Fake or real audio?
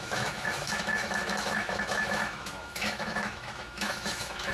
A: fake